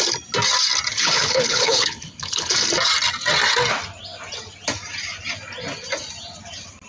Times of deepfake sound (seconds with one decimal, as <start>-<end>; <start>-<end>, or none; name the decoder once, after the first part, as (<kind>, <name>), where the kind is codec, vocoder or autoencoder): 0.9-2.5 (codec, HILCodec)